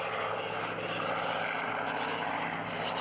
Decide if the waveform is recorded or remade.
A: recorded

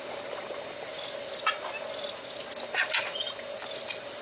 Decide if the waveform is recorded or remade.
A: recorded